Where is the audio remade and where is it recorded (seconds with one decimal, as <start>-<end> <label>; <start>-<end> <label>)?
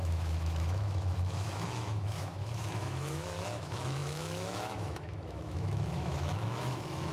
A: 0.0-7.1 remade